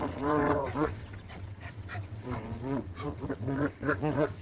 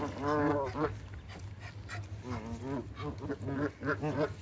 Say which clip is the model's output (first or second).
first